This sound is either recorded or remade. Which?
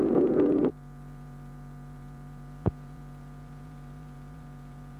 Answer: remade